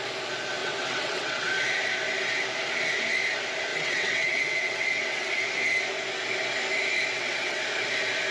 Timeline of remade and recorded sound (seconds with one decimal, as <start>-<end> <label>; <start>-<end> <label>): 0.0-0.6 recorded; 0.6-1.5 remade; 1.5-3.7 recorded; 3.7-5.4 remade; 5.4-7.1 recorded; 7.1-7.6 remade; 7.6-8.3 recorded